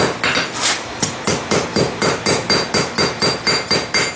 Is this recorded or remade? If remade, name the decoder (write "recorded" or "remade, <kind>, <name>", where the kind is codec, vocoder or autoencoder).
recorded